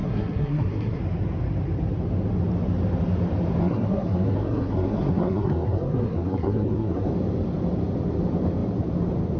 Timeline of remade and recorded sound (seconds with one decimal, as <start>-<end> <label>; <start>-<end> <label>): 0.0-1.0 remade; 1.0-3.6 recorded; 3.6-7.1 remade; 7.1-9.4 recorded